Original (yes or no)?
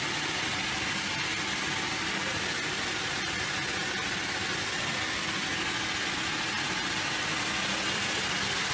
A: yes